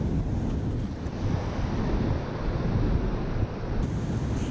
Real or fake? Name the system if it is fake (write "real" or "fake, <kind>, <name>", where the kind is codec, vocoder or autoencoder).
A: real